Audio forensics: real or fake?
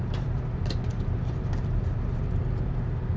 real